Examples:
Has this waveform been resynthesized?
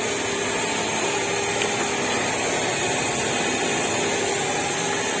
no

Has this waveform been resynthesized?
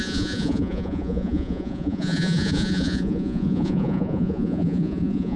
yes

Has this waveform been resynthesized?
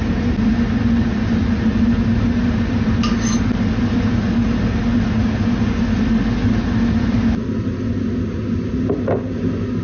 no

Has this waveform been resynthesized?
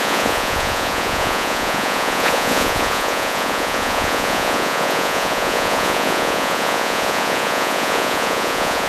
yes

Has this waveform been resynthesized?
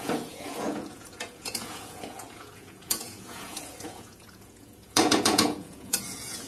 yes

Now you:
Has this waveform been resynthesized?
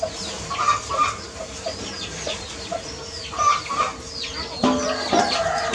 no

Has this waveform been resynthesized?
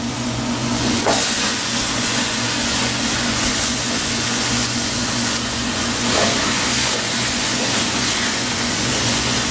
yes